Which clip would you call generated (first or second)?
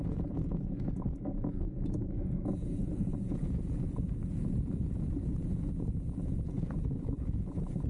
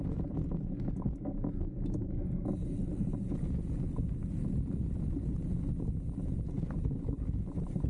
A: first